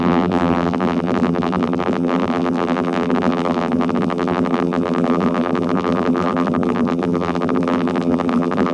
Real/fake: fake